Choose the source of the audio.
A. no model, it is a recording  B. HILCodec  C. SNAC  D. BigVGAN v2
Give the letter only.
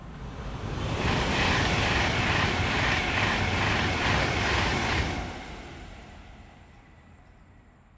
A